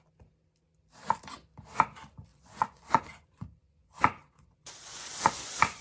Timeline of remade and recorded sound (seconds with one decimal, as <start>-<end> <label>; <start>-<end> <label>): 0.0-2.3 recorded; 2.3-5.8 remade